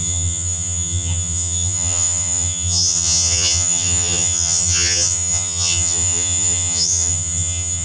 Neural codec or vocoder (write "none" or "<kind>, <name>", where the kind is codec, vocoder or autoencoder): vocoder, HiFi-GAN